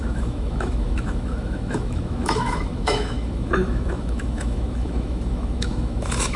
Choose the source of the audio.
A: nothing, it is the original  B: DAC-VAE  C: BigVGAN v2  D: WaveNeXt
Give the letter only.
B